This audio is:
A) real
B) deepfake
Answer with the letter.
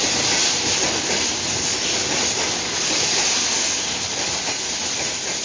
A